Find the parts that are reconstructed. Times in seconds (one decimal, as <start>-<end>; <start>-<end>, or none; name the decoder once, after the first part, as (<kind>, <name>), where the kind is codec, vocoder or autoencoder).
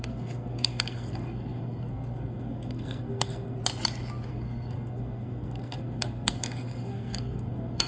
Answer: 0.0-3.6 (codec, SNAC); 4.3-7.9